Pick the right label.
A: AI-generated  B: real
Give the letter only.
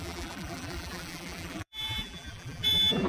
A